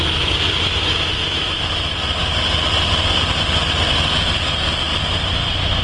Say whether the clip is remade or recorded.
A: recorded